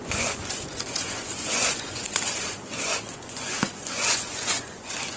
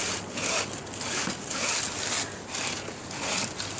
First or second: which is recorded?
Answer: second